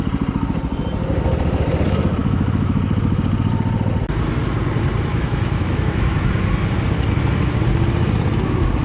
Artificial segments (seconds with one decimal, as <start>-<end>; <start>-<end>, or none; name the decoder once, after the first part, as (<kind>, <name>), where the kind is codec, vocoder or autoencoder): 2.2-2.8 (autoencoder, DAC-VAE); 5.1-6.3